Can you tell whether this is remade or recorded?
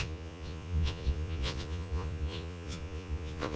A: remade